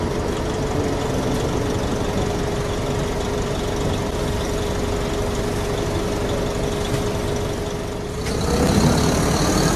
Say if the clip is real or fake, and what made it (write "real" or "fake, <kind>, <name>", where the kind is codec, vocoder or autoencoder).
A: real